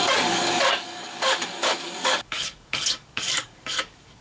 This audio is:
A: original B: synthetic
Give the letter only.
B